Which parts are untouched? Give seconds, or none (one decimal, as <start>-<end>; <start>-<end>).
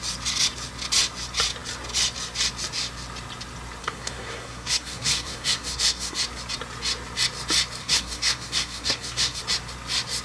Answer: 0.0-3.8; 6.2-7.8; 9.4-10.2